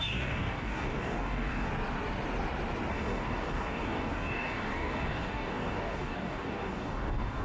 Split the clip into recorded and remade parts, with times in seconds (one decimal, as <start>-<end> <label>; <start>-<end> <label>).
0.0-1.7 remade; 1.7-2.9 recorded; 2.9-7.4 remade